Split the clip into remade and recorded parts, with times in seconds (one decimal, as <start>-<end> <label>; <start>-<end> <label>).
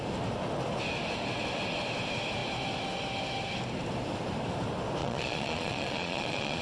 0.0-5.0 recorded; 5.0-6.6 remade